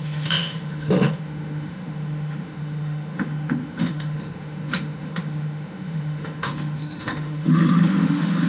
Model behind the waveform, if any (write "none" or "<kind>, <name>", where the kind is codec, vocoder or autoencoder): autoencoder, DAC-VAE